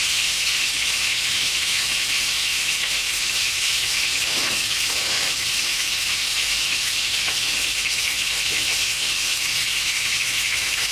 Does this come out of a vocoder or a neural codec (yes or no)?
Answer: yes